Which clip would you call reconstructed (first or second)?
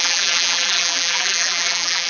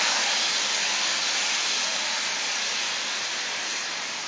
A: first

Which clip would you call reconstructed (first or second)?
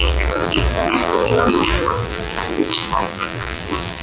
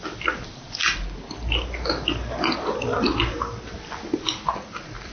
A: first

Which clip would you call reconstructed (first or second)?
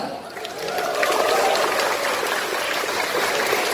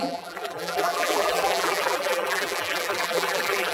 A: second